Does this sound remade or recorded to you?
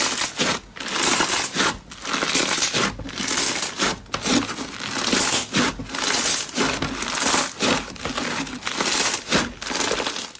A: recorded